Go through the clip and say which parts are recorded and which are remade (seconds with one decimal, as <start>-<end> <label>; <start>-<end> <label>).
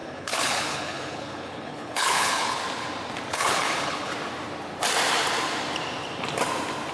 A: 0.0-2.6 remade; 2.6-3.3 recorded; 3.3-4.1 remade; 4.1-6.9 recorded